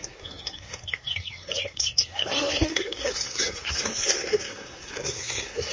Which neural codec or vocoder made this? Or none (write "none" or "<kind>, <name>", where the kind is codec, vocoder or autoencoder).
codec, SNAC